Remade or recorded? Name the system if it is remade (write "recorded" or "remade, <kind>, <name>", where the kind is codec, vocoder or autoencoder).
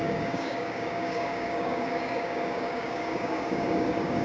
remade, codec, DAC